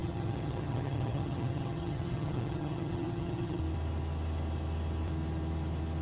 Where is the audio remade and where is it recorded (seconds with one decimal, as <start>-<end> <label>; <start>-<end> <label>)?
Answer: 0.0-3.6 remade; 3.6-6.0 recorded